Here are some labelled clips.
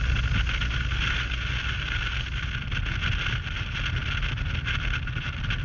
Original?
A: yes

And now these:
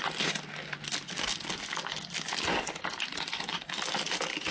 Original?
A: yes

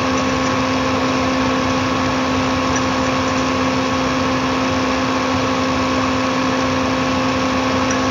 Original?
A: yes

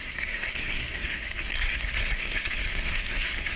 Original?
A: no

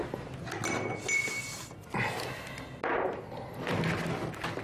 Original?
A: yes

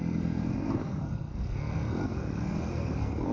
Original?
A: no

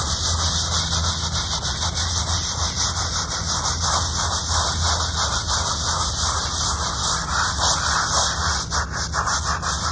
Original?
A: yes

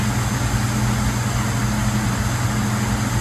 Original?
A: yes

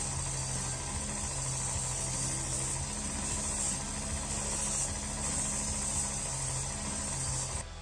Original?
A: yes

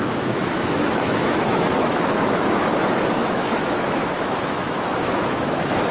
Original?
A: no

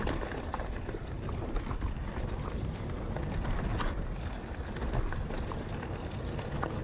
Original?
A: yes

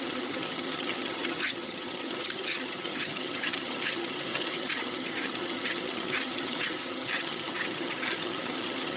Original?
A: no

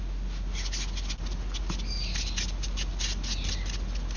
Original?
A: yes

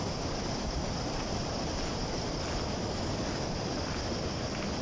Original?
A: yes